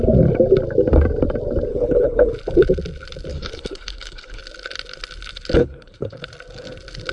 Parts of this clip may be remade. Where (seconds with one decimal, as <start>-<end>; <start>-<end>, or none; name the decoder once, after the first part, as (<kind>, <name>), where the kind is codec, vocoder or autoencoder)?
1.7-2.3 (codec, HILCodec); 3.3-4.4; 5.6-6.2

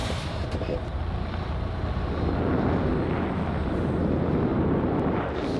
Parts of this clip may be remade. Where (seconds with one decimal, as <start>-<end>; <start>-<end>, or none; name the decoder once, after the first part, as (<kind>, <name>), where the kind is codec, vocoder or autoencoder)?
4.5-5.1 (vocoder, BigVGAN v2)

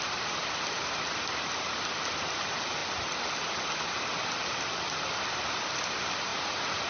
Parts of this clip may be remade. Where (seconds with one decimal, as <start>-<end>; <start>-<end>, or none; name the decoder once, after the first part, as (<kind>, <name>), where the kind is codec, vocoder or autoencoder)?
6.3-6.9 (vocoder, Vocos)

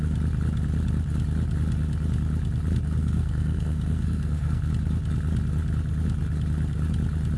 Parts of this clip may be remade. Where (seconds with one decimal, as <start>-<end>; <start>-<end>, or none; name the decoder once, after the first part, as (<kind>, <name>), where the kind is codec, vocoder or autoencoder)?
3.0-4.7 (codec, SNAC)

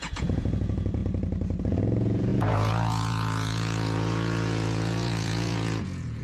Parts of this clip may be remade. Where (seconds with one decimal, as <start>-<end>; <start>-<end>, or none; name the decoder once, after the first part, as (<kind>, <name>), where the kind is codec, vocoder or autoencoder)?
0.0-1.0 (vocoder, Vocos); 1.6-6.2